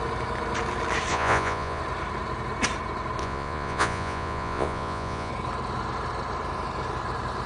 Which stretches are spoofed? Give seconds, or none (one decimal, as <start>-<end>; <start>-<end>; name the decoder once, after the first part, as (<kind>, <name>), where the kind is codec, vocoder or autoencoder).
1.1-1.8 (vocoder, Vocos); 3.2-5.3